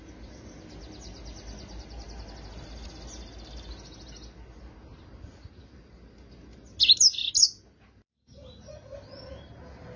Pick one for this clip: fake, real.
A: real